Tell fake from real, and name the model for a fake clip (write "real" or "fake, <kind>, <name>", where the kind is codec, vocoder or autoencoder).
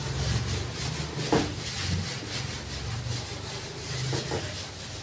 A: real